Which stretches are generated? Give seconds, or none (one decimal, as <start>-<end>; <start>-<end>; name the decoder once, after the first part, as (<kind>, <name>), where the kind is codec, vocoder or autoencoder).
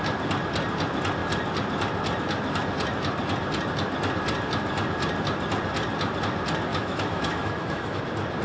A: 6.7-8.0 (autoencoder, DAC-VAE)